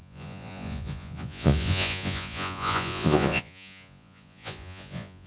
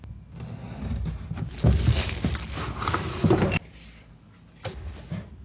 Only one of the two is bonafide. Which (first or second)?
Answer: second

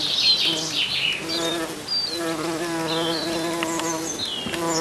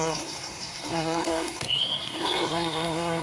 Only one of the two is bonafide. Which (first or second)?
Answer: first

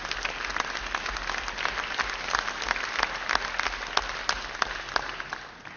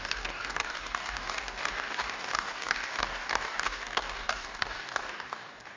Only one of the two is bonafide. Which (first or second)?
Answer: first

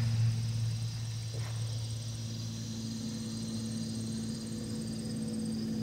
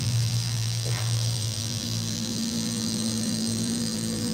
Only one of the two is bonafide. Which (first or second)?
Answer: first